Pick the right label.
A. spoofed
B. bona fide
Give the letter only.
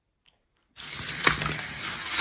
B